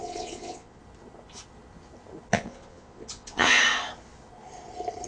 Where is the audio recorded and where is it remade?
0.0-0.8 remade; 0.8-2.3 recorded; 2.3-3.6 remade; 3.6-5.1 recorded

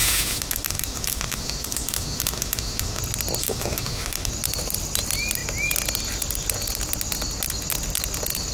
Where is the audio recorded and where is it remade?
0.0-3.0 remade; 3.0-3.4 recorded; 3.4-4.3 remade; 4.3-8.5 recorded

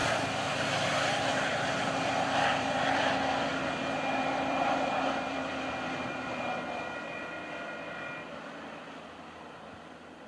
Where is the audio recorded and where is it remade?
0.0-3.0 remade; 3.0-3.5 recorded; 3.5-6.4 remade; 6.4-10.3 recorded

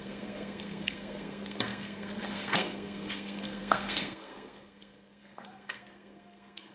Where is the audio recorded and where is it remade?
0.0-6.7 remade